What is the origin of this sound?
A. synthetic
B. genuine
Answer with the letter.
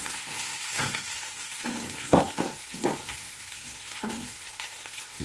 A